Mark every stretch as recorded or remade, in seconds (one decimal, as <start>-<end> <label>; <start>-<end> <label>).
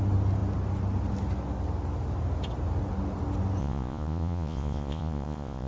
0.0-3.6 recorded; 3.6-5.7 remade